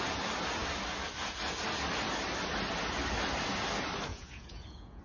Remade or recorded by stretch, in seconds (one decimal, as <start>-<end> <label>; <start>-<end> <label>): 0.0-4.1 recorded; 4.1-5.0 remade